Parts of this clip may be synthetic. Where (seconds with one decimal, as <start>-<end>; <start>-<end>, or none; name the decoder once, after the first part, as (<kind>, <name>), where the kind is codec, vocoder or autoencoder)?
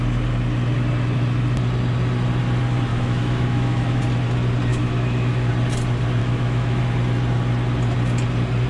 2.9-4.0 (autoencoder, DAC-VAE); 4.7-5.5; 6.2-6.8